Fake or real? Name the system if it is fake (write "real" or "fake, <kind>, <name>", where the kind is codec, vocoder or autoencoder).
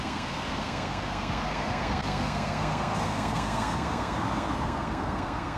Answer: fake, codec, SNAC